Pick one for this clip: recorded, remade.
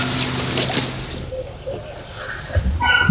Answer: recorded